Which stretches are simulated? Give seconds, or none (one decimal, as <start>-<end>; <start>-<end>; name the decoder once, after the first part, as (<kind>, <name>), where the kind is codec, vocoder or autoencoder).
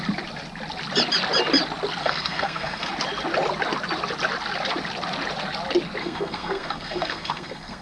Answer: 2.0-2.9 (codec, SNAC); 6.0-7.8